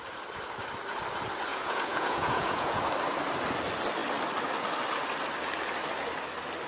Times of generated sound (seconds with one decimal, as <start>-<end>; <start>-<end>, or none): 1.5-2.8